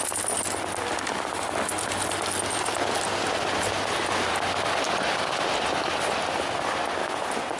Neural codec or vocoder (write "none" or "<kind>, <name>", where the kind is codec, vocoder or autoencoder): none